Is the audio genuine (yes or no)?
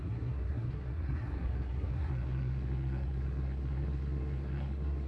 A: no